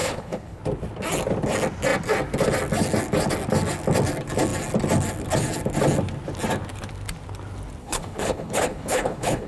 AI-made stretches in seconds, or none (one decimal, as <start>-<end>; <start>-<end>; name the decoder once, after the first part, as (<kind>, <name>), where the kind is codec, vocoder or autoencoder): 0.0-0.6 (codec, HILCodec); 7.8-9.5